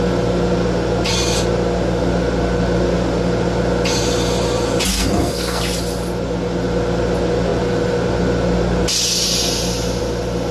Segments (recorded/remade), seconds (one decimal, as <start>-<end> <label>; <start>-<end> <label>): 0.0-4.9 recorded; 4.9-5.6 remade; 5.6-10.5 recorded